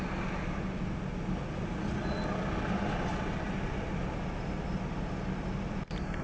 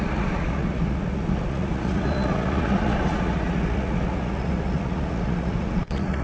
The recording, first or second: first